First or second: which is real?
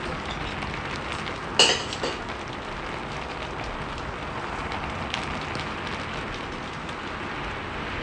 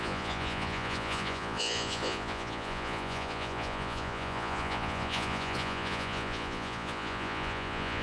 first